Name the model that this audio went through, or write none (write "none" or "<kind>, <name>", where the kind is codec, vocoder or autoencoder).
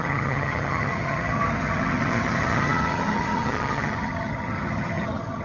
vocoder, HiFi-GAN